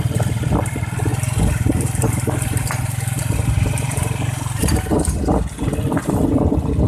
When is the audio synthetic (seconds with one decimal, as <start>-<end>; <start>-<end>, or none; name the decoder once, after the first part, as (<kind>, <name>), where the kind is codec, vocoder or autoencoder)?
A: 1.1-5.2 (vocoder, BigVGAN v2)